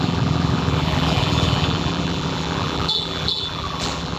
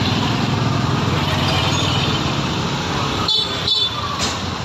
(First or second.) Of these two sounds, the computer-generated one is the first